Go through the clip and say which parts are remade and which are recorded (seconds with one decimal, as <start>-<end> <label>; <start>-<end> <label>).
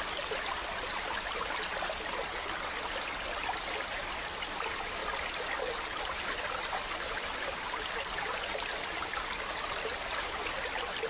0.0-11.1 recorded